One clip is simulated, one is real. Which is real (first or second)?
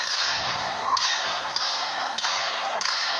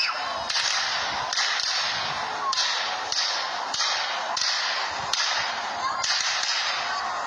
second